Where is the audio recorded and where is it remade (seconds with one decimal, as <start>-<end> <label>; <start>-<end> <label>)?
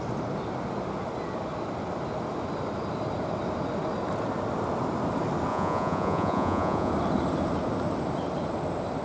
0.0-5.5 recorded; 5.5-6.9 remade; 6.9-9.0 recorded